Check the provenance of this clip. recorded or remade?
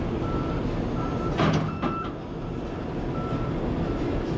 recorded